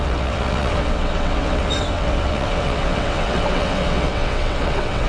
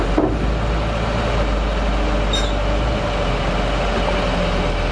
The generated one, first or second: first